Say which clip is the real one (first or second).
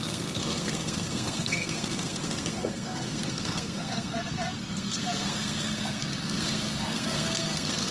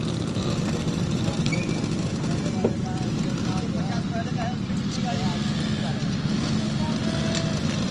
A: second